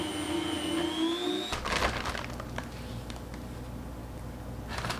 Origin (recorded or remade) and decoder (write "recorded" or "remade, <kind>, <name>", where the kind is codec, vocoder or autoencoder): recorded